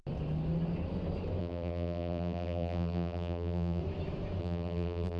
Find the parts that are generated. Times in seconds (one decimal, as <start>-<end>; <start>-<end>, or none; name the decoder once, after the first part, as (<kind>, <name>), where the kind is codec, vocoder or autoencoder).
1.4-3.8 (vocoder, BigVGAN v2); 4.4-5.2